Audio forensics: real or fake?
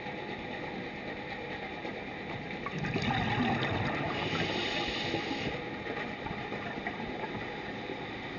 real